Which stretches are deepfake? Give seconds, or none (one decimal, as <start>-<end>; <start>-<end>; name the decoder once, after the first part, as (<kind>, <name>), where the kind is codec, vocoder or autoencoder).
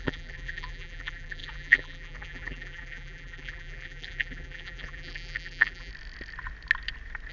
0.0-5.9 (vocoder, BigVGAN v2)